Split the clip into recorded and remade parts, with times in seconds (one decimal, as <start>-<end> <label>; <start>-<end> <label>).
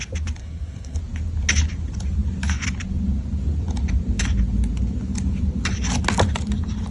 0.0-0.4 recorded; 0.4-1.0 remade; 1.0-6.9 recorded